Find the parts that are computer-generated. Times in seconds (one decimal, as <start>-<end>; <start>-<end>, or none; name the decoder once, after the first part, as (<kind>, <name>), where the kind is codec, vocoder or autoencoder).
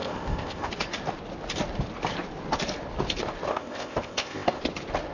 0.0-0.7 (codec, ZipCodec); 3.5-4.6